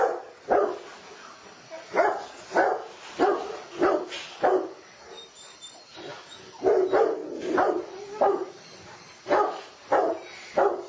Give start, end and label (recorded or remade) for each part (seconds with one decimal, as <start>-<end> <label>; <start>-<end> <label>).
0.0-10.9 recorded